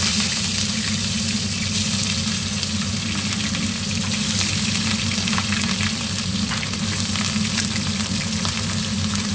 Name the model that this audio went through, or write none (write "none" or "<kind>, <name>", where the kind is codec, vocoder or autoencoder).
none